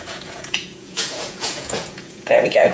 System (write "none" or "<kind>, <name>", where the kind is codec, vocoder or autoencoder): vocoder, Vocos